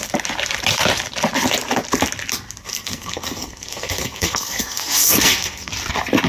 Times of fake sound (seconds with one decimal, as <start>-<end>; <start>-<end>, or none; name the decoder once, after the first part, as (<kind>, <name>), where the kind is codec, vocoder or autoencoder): 2.7-5.7 (codec, SNAC)